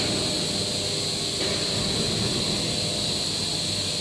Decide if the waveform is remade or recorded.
recorded